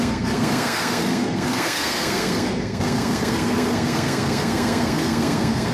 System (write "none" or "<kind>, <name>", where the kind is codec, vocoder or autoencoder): codec, SNAC